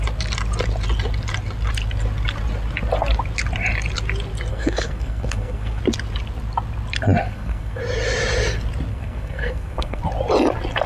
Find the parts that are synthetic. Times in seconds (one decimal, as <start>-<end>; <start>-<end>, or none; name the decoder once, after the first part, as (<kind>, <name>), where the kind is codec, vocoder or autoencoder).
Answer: 4.5-5.8 (codec, SNAC); 7.2-7.8; 8.9-10.0

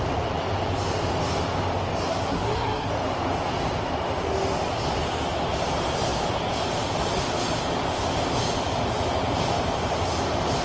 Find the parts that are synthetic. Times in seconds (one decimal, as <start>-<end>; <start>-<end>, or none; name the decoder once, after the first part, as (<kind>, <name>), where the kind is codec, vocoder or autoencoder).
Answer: 2.1-2.9 (codec, SNAC)

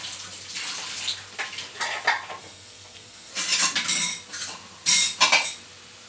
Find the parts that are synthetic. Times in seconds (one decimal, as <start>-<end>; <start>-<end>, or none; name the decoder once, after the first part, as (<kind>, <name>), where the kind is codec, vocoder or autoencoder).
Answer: 2.4-3.3 (codec, SNAC)

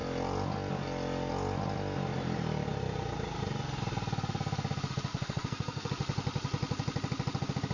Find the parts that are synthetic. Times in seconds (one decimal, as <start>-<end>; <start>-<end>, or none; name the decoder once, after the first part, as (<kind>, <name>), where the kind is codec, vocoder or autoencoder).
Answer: 5.1-5.9 (codec, SNAC)

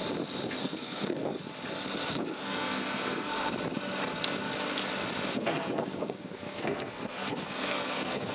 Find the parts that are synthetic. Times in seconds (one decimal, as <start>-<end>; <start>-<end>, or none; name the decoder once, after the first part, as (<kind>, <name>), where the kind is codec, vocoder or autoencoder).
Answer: 0.6-1.4 (codec, SNAC); 2.1-3.5; 5.3-8.3

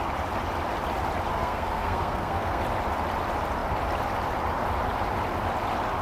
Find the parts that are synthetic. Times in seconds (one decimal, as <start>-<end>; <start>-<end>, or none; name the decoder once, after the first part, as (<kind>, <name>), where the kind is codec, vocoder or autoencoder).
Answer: 1.3-2.6 (codec, SNAC)